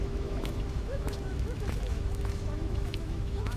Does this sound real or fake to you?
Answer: fake